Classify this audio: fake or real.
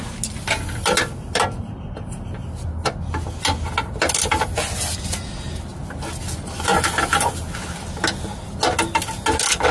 real